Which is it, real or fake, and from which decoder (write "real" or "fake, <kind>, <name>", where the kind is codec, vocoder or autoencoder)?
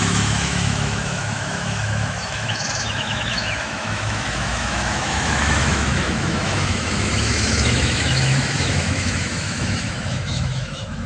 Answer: fake, autoencoder, DAC-VAE